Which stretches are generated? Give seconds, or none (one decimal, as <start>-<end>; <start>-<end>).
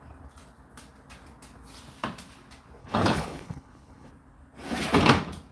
2.8-4.1